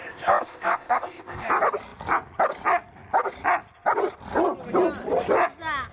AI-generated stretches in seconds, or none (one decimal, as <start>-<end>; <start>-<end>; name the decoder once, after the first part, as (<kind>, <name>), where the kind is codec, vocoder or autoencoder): 0.0-1.5 (codec, ZipCodec)